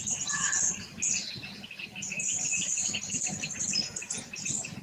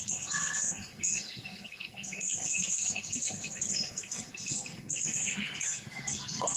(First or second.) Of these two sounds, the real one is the first